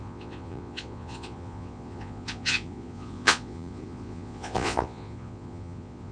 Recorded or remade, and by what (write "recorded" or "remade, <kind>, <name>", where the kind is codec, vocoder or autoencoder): remade, vocoder, Vocos